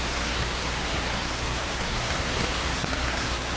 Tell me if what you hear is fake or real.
fake